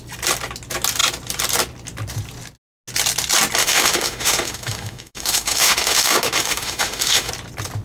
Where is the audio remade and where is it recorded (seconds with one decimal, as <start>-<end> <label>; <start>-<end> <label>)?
0.0-3.6 recorded; 3.6-7.3 remade; 7.3-7.8 recorded